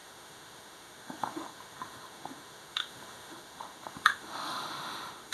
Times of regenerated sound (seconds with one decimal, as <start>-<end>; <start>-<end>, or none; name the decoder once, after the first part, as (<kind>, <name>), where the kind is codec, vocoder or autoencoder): 0.0-5.3 (autoencoder, DAC-VAE)